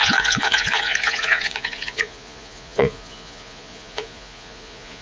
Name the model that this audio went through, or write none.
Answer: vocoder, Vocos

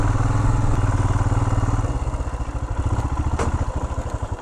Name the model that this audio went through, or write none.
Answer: none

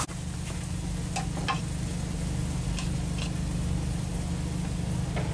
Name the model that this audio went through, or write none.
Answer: none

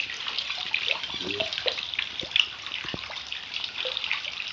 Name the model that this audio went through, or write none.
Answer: vocoder, BigVGAN v2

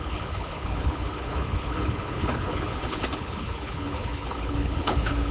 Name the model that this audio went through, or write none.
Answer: codec, HILCodec